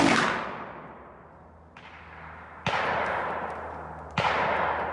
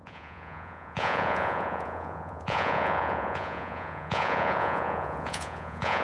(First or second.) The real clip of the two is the first